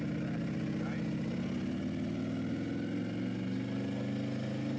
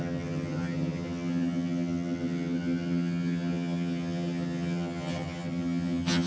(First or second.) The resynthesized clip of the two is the second